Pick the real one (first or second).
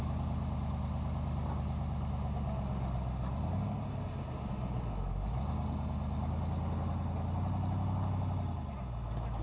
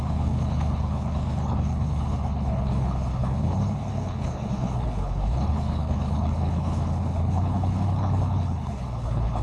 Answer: first